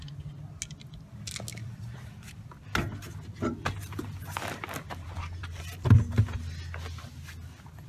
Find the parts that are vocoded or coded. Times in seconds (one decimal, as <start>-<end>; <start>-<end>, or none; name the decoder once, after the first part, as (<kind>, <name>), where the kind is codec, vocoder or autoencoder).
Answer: 1.5-2.6 (vocoder, BigVGAN v2); 3.6-6.1